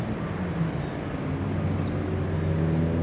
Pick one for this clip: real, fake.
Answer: real